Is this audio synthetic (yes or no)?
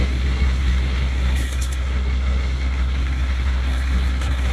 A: yes